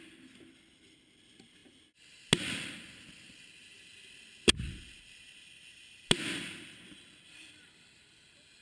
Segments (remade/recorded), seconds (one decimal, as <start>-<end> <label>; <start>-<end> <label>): 0.0-8.6 recorded

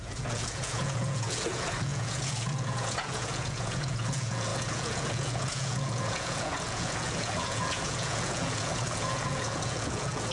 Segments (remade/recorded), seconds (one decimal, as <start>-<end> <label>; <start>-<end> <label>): 0.0-10.3 remade